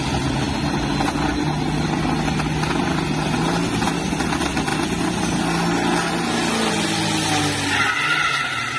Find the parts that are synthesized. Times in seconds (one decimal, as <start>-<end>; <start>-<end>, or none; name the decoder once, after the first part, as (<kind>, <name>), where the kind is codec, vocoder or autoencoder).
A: none